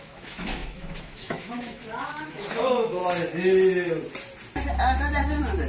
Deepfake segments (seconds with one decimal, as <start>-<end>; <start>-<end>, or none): 0.0-3.0